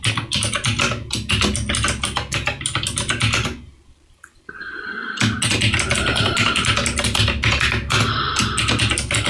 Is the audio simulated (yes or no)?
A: no